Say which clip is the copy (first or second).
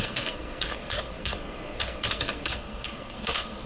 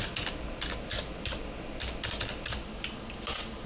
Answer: first